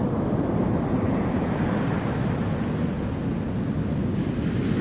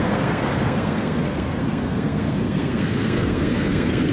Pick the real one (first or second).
first